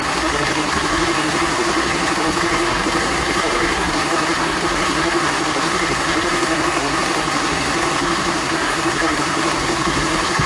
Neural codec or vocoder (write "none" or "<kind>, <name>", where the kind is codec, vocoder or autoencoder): codec, SNAC